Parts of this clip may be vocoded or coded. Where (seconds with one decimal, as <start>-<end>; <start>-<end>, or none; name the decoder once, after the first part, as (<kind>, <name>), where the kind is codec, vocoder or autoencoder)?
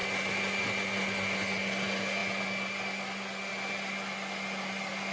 none